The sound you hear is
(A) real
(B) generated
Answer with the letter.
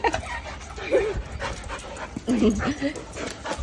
A